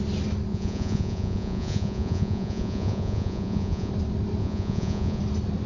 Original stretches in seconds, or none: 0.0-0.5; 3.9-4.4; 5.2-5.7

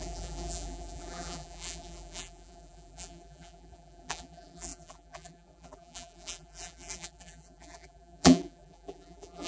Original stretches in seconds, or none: none

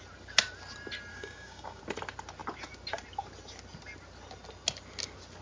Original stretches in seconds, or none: 0.0-1.1; 1.8-5.4

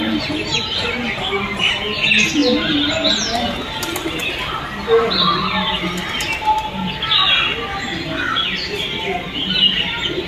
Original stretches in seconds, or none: 0.0-10.3